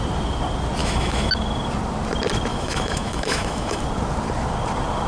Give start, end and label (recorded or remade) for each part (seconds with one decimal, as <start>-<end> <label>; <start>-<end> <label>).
0.0-0.8 recorded; 0.8-1.3 remade; 1.3-2.5 recorded; 2.5-3.8 remade; 3.8-5.1 recorded